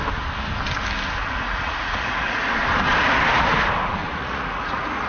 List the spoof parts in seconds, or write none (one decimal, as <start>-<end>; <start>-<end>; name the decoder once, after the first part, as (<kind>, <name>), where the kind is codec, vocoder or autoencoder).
1.2-2.5 (vocoder, Vocos); 4.0-5.1